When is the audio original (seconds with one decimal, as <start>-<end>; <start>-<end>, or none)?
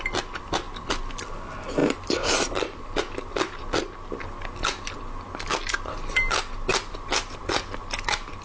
0.0-1.8; 3.0-6.7; 7.4-8.4